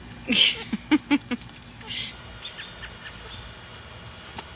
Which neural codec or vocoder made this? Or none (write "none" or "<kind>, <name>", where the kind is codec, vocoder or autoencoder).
none